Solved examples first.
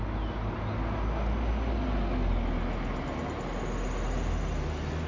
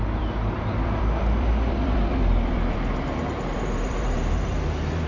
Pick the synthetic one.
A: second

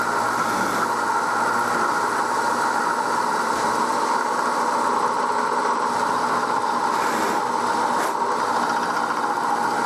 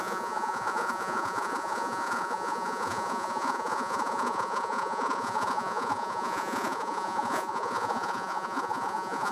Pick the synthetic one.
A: second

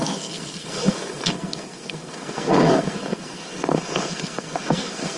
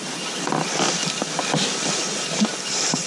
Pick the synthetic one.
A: first